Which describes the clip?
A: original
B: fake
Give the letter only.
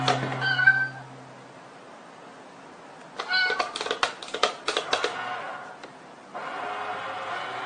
A